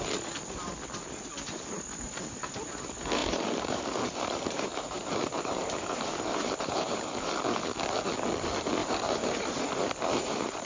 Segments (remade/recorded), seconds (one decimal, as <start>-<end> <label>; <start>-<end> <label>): 0.0-3.2 recorded; 3.2-7.3 remade; 7.3-8.8 recorded; 8.8-10.7 remade